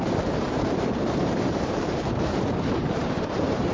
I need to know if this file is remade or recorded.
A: remade